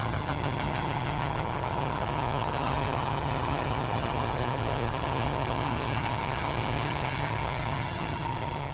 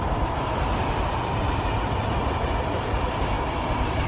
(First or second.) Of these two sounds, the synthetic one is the first